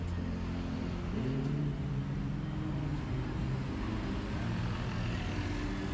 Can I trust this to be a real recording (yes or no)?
yes